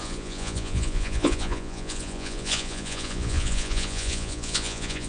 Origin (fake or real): fake